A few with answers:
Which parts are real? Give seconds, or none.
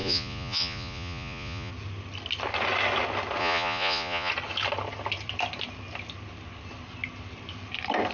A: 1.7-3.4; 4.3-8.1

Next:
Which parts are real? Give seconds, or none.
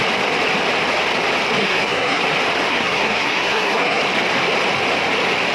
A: 0.0-1.6; 2.2-2.7; 4.0-5.5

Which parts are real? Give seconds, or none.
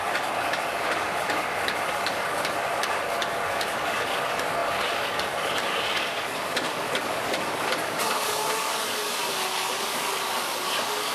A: none